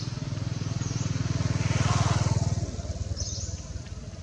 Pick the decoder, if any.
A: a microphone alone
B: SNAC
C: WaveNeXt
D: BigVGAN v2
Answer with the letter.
A